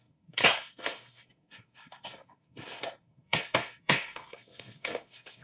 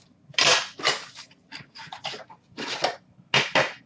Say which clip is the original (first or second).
second